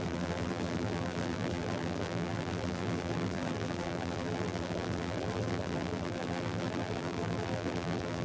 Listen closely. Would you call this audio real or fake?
fake